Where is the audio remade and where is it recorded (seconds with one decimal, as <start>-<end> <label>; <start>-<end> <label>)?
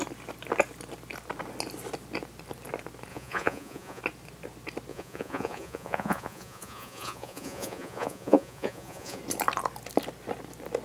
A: 0.0-3.1 recorded; 3.1-4.0 remade; 4.0-4.9 recorded; 4.9-9.2 remade; 9.2-10.8 recorded